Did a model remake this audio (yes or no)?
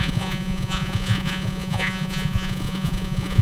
yes